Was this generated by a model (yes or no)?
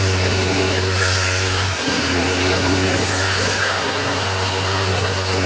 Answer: yes